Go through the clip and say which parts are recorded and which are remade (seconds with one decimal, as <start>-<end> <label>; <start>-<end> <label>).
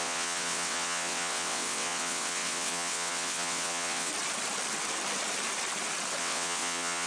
0.0-4.1 remade; 4.1-6.2 recorded; 6.2-7.1 remade